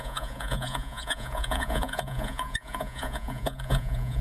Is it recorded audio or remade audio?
remade